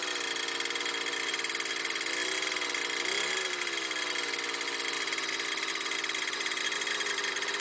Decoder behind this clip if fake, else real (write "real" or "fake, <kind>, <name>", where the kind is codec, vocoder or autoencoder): real